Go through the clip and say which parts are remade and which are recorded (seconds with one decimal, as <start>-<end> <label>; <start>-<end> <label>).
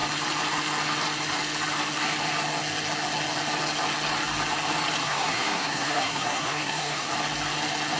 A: 0.0-5.0 recorded; 5.0-7.1 remade; 7.1-8.0 recorded